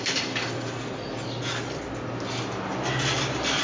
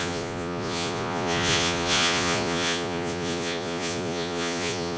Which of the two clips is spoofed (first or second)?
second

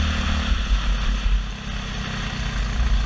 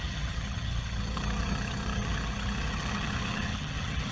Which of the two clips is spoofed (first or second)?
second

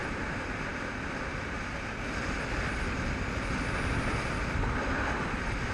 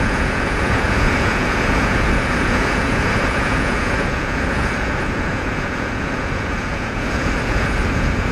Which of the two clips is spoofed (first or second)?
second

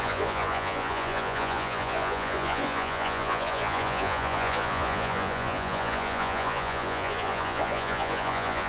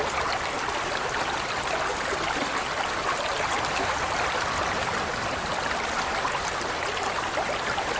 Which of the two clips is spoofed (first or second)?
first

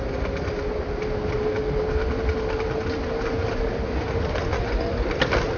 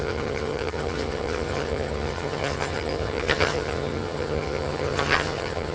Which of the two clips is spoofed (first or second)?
second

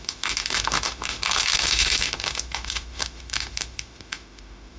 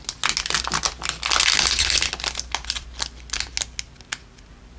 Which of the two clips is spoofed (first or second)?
first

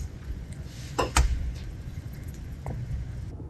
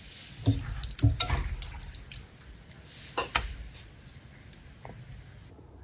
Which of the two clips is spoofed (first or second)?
first